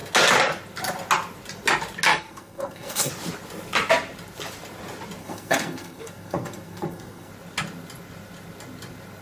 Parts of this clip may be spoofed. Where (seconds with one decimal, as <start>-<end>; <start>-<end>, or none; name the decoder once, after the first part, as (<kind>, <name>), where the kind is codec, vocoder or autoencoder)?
2.1-3.1 (codec, SNAC); 5.2-7.3